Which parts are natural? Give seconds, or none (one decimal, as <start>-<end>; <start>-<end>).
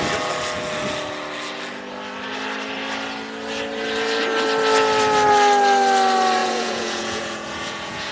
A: 0.0-6.4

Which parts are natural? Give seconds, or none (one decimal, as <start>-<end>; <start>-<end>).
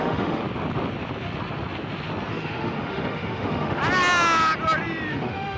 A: 0.4-2.3; 3.8-5.1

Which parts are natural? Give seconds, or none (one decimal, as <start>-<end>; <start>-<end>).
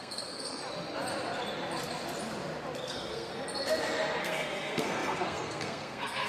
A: 0.6-2.8; 3.3-4.2